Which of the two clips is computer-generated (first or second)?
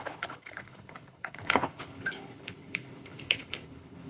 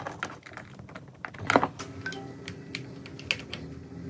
first